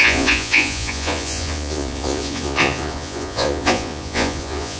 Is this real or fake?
fake